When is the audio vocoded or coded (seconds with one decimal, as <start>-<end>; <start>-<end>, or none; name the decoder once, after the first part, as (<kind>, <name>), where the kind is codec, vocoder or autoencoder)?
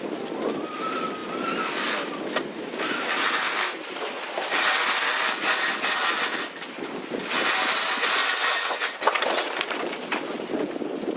8.2-9.5 (vocoder, WaveNeXt)